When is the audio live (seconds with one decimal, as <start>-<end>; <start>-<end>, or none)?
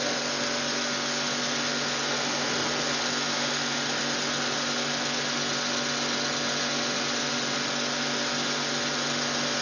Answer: 0.0-9.6